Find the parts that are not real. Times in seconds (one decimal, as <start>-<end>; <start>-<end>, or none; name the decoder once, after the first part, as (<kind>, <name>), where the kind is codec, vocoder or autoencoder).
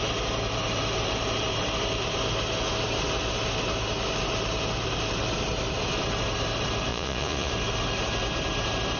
6.9-7.5 (vocoder, Vocos)